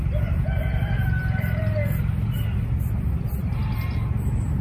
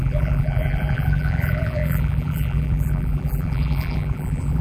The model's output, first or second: second